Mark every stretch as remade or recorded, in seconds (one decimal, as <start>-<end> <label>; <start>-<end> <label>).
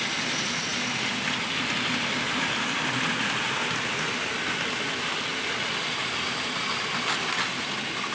0.0-8.1 recorded